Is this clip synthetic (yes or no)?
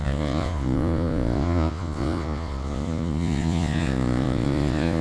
yes